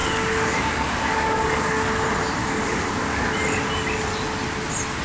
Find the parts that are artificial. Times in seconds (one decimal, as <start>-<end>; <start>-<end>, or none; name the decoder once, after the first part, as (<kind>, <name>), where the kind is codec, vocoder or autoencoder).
0.0-1.9 (codec, DAC); 2.4-3.3